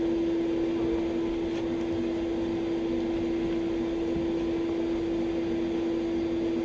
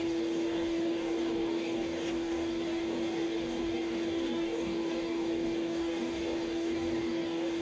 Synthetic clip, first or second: second